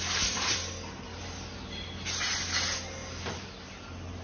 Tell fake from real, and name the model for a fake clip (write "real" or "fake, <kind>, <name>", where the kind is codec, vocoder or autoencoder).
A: real